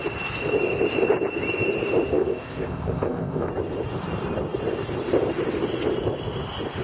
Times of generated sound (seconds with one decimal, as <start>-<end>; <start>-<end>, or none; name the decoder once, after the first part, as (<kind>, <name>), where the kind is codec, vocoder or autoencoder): 2.1-3.5 (codec, ZipCodec)